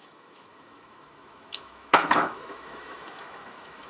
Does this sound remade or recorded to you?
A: remade